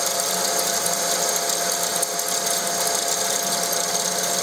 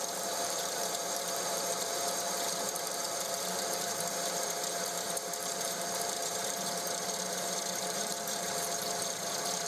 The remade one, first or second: second